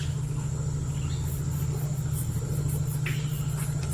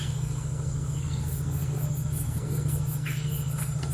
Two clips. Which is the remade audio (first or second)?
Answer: second